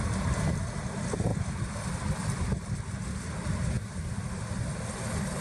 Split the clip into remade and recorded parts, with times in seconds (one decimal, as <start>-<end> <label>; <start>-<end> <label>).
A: 0.0-1.3 recorded; 1.3-1.9 remade; 1.9-5.4 recorded